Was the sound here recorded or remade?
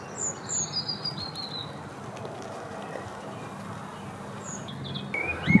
recorded